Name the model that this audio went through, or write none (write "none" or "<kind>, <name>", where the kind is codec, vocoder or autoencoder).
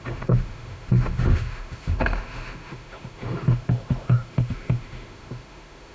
autoencoder, DAC-VAE